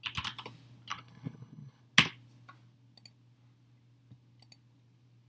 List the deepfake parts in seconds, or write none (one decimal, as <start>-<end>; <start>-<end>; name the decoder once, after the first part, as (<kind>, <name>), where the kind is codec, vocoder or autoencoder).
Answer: 0.9-1.8 (codec, HILCodec)